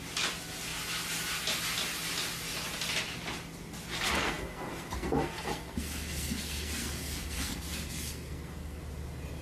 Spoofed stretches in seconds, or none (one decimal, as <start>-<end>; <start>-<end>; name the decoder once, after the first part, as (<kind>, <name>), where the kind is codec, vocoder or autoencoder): 3.9-8.8 (codec, SNAC)